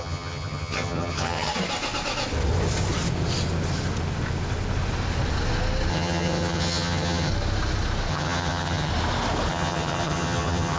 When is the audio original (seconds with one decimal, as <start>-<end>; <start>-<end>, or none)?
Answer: 1.5-5.9; 7.3-8.1; 8.9-9.5